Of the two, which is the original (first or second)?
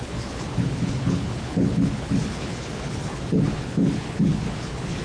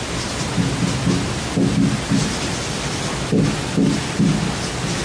second